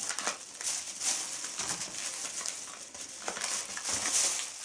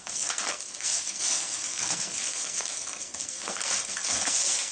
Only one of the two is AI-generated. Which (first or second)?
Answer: second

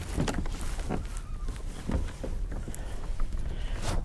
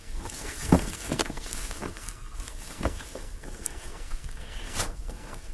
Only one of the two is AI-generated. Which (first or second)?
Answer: second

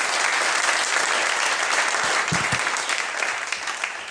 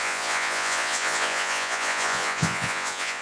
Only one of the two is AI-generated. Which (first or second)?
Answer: second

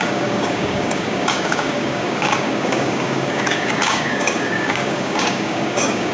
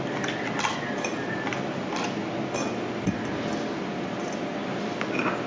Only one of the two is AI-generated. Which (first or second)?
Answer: first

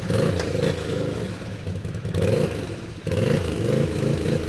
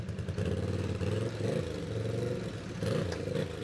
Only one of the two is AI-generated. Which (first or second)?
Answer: first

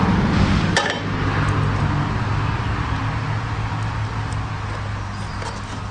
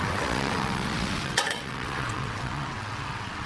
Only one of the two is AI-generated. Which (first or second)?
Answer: second